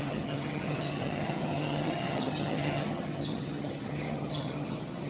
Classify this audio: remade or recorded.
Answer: remade